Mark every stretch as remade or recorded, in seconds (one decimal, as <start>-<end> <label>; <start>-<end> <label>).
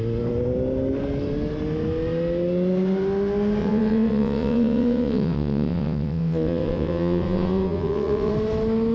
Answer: 0.0-3.6 recorded; 3.6-8.3 remade; 8.3-8.9 recorded